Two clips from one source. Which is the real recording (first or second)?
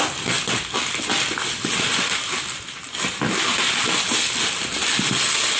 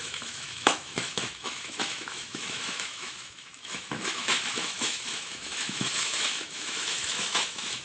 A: first